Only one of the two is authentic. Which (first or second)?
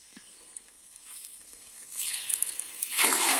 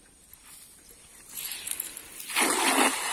second